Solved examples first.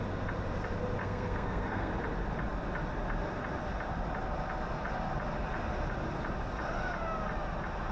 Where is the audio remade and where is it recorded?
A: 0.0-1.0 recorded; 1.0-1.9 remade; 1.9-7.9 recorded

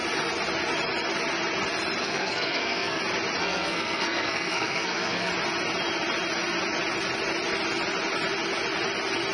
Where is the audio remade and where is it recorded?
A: 0.0-2.0 recorded; 2.0-3.0 remade; 3.0-3.4 recorded; 3.4-5.3 remade; 5.3-9.3 recorded

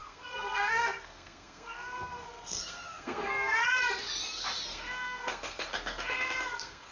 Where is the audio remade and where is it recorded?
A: 0.0-3.8 remade; 3.8-4.7 recorded; 4.7-6.9 remade

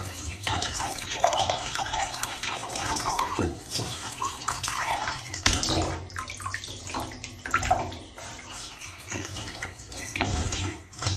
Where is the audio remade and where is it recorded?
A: 0.0-5.6 remade; 5.6-8.5 recorded; 8.5-11.2 remade

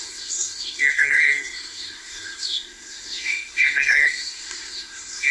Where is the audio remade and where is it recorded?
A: 0.0-5.3 remade

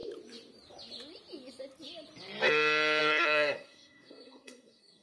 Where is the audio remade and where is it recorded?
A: 0.0-3.0 recorded; 3.0-5.0 remade

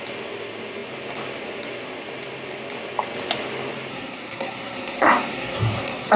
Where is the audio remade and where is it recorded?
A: 0.0-3.9 recorded; 3.9-6.2 remade